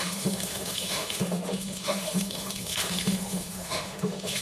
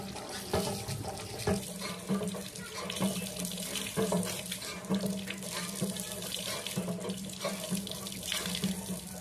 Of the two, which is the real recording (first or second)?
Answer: second